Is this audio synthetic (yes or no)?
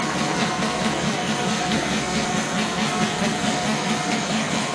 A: yes